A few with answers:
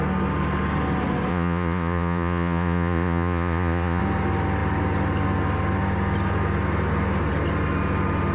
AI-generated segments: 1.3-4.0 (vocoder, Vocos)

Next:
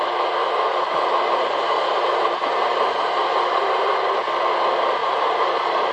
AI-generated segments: 0.4-3.9 (vocoder, BigVGAN v2); 5.0-5.9

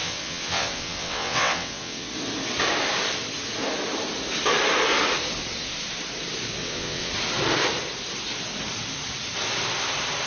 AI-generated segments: 0.0-2.1 (vocoder, WaveNeXt); 6.6-7.1